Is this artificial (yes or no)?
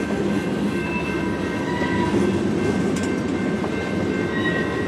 no